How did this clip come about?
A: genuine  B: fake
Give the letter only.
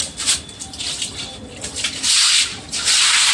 A